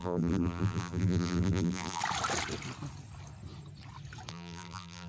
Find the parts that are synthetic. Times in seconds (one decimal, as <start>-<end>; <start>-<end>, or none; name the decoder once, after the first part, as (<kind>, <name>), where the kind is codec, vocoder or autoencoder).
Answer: 0.0-2.0 (vocoder, BigVGAN v2); 4.3-5.1